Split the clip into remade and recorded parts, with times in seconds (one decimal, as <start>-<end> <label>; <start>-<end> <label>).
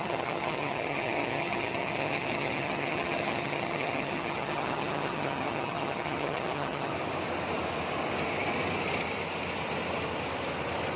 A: 0.0-6.9 remade; 6.9-11.0 recorded